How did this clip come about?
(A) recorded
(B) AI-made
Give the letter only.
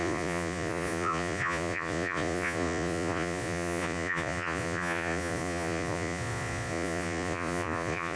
B